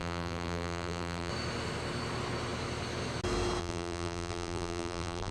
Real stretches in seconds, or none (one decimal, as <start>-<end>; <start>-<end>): 1.3-3.6